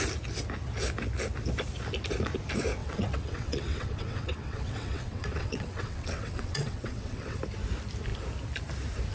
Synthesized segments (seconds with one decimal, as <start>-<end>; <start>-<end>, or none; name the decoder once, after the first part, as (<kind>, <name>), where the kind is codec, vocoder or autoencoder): 2.8-7.4 (vocoder, WaveNeXt)

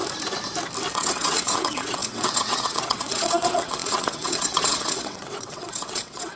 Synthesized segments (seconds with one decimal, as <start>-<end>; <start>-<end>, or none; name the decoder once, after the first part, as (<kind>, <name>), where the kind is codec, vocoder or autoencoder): 0.9-6.4 (vocoder, WaveNeXt)

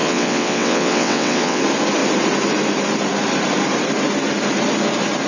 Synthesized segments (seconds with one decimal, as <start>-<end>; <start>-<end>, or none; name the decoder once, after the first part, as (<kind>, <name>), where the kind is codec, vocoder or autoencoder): 0.0-1.6 (vocoder, WaveNeXt)

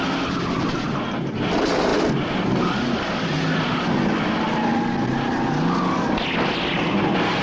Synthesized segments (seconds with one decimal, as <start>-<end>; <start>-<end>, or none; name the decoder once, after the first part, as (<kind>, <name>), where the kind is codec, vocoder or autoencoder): none

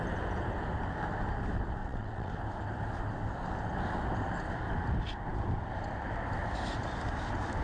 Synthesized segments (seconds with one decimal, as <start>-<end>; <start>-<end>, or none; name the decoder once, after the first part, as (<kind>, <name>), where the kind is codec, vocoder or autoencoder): 1.8-2.3 (vocoder, WaveNeXt)